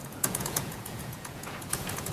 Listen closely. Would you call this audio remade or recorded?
remade